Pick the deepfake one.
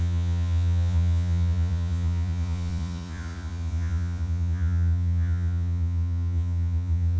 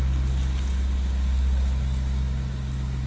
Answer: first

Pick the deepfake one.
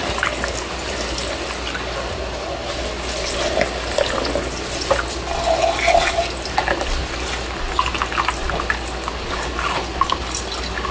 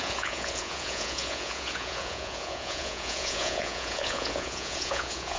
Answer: second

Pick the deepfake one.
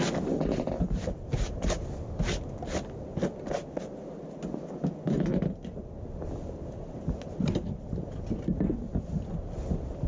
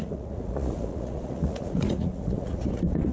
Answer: second